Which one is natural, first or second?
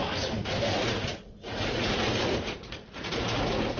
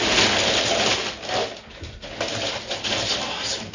second